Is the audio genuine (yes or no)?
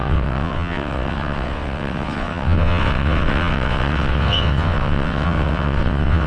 no